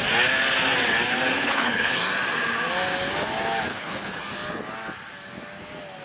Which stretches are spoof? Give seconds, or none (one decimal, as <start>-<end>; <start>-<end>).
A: 1.4-2.0; 3.7-4.2